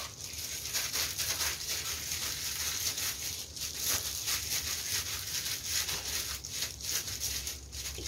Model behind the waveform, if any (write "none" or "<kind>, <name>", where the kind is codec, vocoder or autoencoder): none